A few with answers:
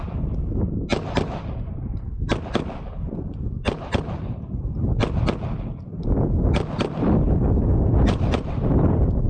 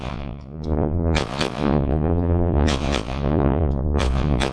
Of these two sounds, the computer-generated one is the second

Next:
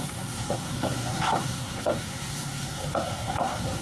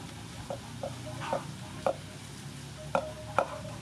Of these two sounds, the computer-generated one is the first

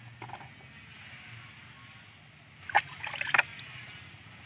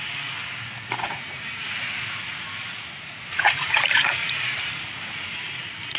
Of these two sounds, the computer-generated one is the second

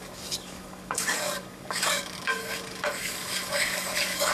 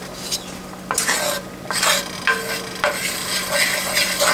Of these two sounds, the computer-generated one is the first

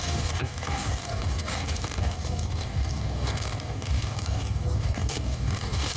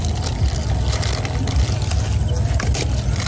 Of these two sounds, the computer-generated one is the first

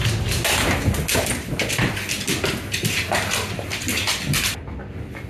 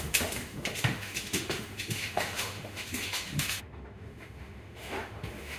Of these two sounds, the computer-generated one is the second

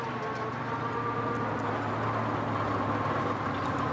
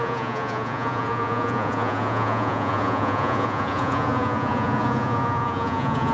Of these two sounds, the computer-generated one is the second